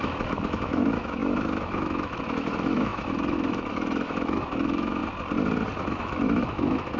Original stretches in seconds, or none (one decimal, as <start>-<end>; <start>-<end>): 5.0-5.8